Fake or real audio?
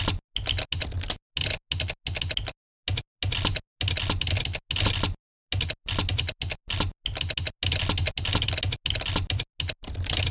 real